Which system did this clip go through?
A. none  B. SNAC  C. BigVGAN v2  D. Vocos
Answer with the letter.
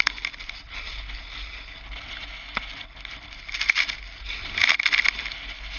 A